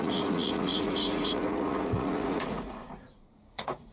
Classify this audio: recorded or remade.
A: remade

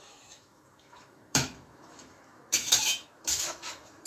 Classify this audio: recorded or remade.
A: remade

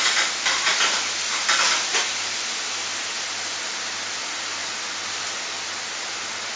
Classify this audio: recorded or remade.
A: remade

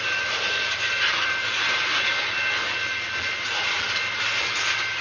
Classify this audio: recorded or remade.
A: recorded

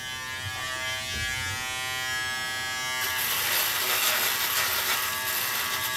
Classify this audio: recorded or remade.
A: recorded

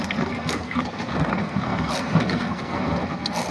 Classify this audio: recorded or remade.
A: remade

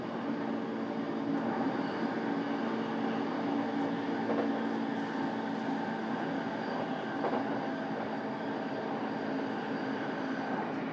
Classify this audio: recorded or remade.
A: recorded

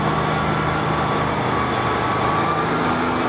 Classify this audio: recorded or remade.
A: recorded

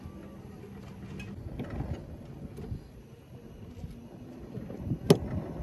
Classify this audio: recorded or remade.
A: recorded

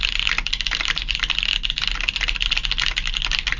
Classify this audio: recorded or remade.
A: recorded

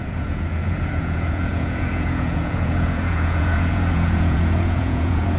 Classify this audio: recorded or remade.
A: remade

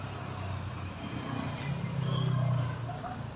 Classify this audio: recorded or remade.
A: recorded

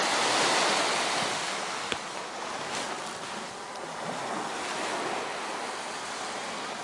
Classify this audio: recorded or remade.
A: recorded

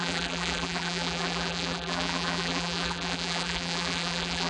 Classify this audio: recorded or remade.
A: remade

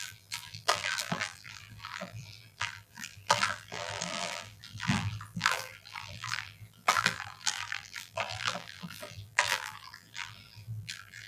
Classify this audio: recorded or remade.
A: remade